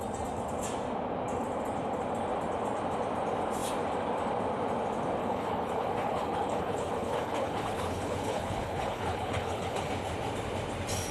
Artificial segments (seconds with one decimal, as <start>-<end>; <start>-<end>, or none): 5.2-9.9